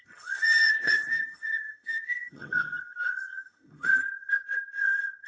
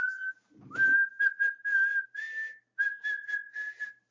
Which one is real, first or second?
second